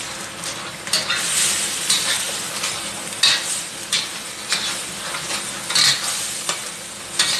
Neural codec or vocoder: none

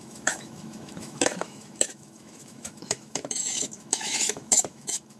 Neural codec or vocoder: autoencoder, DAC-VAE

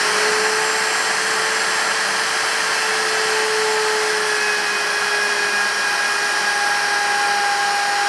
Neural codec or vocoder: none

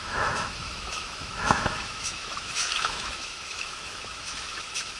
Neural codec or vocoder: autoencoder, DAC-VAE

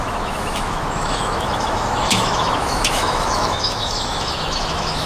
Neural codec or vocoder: autoencoder, DAC-VAE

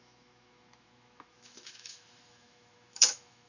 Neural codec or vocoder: autoencoder, DAC-VAE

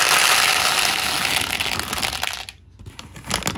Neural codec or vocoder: none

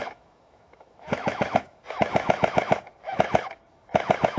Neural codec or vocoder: autoencoder, DAC-VAE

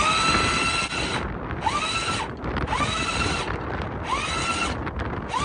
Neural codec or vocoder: none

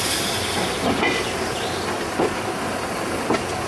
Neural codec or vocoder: none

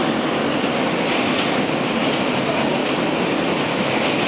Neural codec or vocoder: none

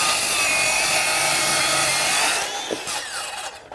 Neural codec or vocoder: none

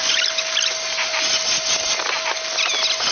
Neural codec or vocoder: none